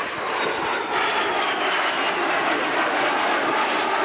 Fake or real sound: real